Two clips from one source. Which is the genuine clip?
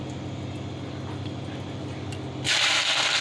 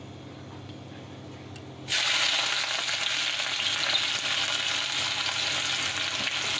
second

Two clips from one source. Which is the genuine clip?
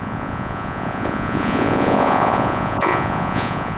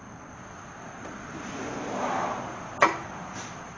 second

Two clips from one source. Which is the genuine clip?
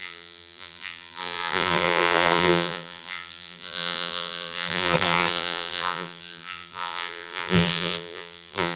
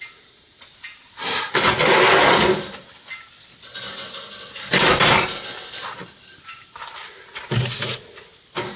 second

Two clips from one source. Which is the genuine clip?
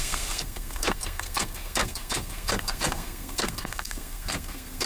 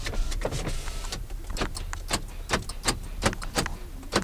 second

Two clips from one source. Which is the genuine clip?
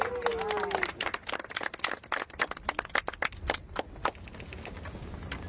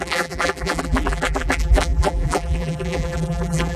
first